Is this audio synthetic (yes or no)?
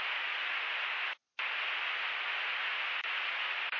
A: no